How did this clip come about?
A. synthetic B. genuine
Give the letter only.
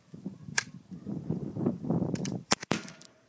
A